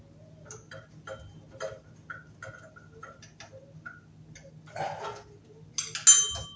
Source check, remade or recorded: recorded